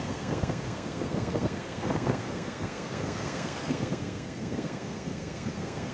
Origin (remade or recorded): remade